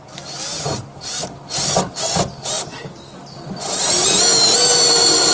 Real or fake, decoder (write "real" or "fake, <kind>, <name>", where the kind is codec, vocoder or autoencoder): real